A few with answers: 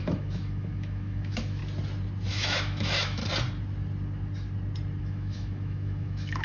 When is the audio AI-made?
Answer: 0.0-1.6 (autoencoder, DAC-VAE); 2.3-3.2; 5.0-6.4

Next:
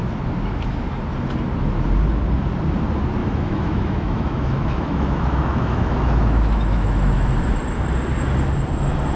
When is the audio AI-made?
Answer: 3.2-7.3 (autoencoder, DAC-VAE)

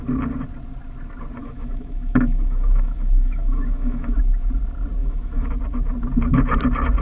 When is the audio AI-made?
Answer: 1.4-4.2 (autoencoder, DAC-VAE); 5.0-5.5

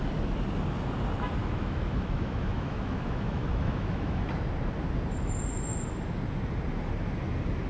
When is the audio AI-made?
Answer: 1.4-4.2 (autoencoder, DAC-VAE)

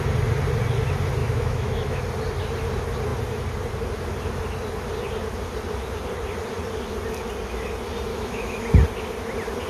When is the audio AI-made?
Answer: 1.2-2.0 (autoencoder, DAC-VAE); 8.1-8.6

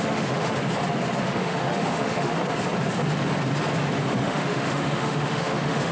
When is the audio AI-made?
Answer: 0.0-0.6 (autoencoder, DAC-VAE); 1.2-2.4; 4.1-5.9

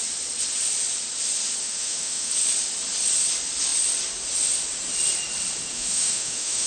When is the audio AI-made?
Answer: 1.6-2.3 (autoencoder, DAC-VAE); 5.7-6.7

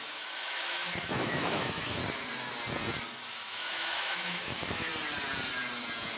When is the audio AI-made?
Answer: 0.0-2.0 (autoencoder, DAC-VAE); 3.3-4.9